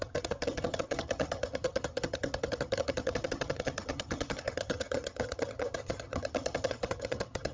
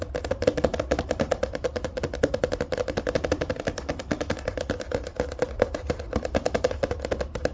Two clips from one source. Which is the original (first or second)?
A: second